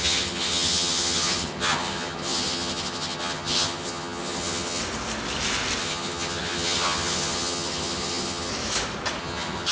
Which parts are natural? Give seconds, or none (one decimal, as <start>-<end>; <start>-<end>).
4.8-5.8; 8.5-9.2